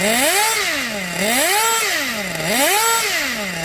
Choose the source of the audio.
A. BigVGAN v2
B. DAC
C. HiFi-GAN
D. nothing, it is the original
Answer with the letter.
D